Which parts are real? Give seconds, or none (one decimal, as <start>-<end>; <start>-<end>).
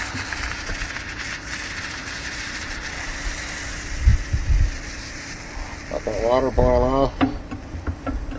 0.0-2.0; 2.8-8.4